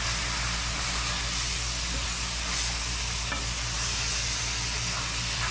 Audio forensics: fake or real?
real